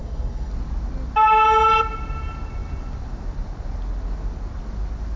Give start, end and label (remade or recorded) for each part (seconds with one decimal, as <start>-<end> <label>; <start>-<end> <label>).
0.0-0.5 remade; 0.5-5.2 recorded